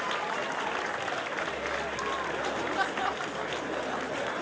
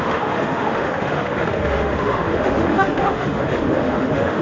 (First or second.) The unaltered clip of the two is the first